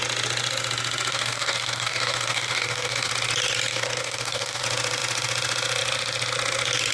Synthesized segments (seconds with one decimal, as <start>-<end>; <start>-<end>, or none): 1.1-3.1; 3.7-4.6

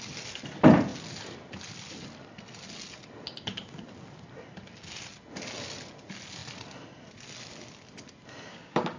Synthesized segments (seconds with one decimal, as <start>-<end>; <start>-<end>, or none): 8.5-9.0